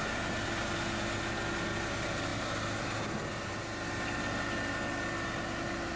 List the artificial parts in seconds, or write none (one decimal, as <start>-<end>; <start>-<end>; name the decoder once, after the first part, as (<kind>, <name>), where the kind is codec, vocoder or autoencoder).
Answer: none